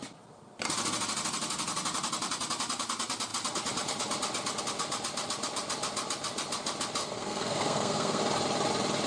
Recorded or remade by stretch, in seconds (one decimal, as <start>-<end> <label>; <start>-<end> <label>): 0.0-7.0 recorded; 7.0-8.2 remade; 8.2-9.1 recorded